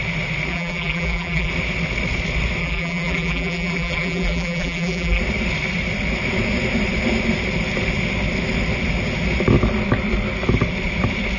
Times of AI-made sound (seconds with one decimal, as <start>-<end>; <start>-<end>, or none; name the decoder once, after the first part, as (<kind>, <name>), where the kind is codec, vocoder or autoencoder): 0.5-1.5 (vocoder, BigVGAN v2); 2.6-5.2

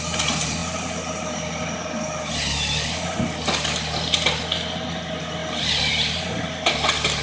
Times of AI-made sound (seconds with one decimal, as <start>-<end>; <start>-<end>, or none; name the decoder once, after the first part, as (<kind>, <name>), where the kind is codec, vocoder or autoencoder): 5.4-5.9 (vocoder, BigVGAN v2)

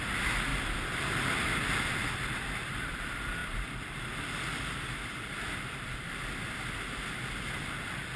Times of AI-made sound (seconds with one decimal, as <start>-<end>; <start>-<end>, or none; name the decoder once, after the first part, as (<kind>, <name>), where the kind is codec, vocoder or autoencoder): 0.5-3.0 (vocoder, BigVGAN v2); 3.4-6.3